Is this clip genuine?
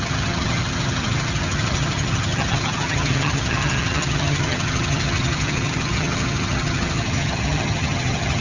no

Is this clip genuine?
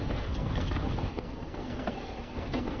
no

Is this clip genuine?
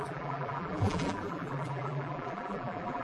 no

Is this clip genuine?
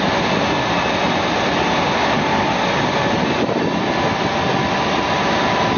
yes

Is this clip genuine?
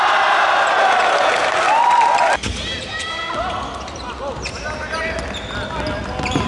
yes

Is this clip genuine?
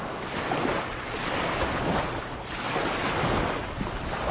yes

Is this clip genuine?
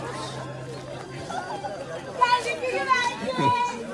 yes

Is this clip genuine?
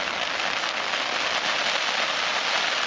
yes